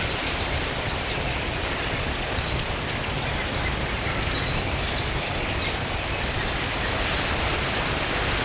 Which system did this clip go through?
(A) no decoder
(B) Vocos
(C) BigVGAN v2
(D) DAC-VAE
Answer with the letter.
A